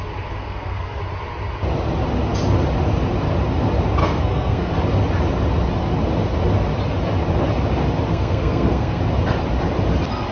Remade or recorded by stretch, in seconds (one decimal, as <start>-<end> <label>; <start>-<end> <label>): 0.0-0.4 recorded; 0.4-1.0 remade; 1.0-4.0 recorded; 4.0-4.7 remade; 4.7-8.1 recorded; 8.1-9.0 remade; 9.0-10.3 recorded

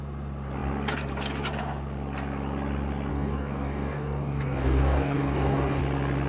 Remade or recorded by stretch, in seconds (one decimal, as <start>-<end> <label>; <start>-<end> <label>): 0.0-3.1 recorded; 3.1-5.8 remade; 5.8-6.3 recorded